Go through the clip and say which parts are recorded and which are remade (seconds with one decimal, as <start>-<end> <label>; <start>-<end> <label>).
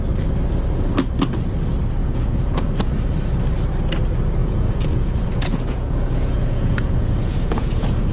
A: 0.0-2.0 recorded; 2.0-2.9 remade; 2.9-4.4 recorded; 4.4-8.1 remade